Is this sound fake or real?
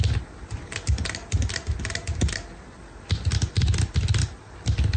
real